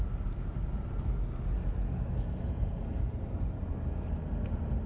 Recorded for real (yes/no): yes